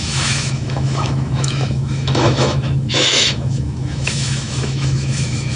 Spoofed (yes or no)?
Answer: yes